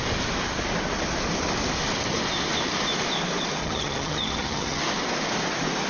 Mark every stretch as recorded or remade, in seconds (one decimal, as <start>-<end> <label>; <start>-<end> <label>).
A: 0.0-3.6 recorded; 3.6-4.8 remade; 4.8-5.9 recorded